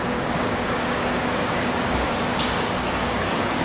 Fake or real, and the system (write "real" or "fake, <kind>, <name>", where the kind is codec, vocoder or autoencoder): fake, codec, DAC